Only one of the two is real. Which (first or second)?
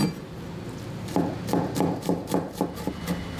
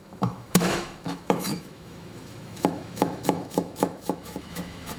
first